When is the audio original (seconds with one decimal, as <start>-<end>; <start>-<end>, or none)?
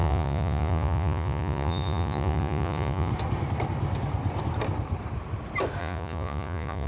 3.1-5.8